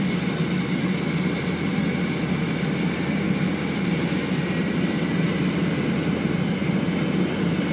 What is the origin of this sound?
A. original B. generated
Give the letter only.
A